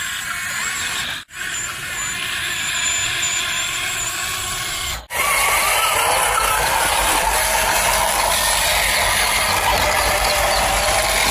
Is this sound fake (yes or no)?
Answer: no